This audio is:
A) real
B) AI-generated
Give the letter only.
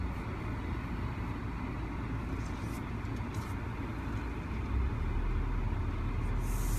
A